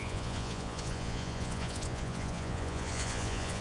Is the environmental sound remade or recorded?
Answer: remade